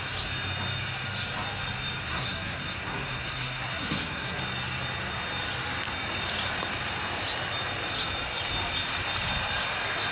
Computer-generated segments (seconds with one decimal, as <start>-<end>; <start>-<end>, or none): 2.0-4.4